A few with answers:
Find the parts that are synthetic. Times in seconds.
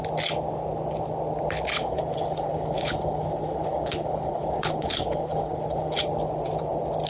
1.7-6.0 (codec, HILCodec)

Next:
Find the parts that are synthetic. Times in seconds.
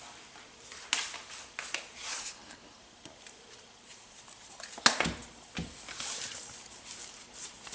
2.1-2.8 (codec, HILCodec)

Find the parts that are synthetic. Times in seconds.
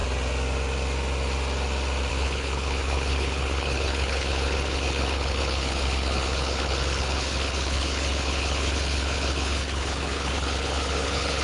2.1-11.4 (codec, HILCodec)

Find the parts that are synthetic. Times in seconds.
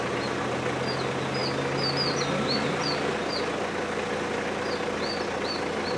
none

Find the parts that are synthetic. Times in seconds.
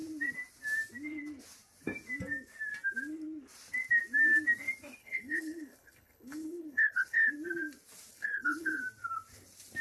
5.0-7.3 (codec, HILCodec); 8.1-8.8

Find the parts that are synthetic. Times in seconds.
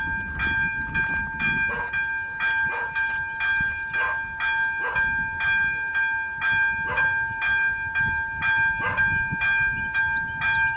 none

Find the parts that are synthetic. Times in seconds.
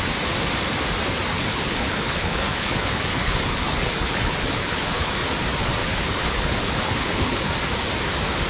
1.3-5.1 (codec, HILCodec); 5.8-7.5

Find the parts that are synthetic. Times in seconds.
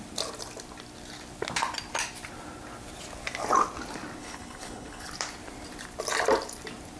4.2-5.1 (codec, HILCodec)